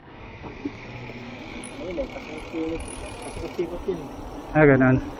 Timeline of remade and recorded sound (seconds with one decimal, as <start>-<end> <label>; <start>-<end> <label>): 0.0-1.4 remade; 1.4-5.2 recorded